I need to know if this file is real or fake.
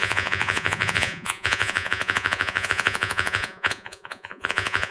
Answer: fake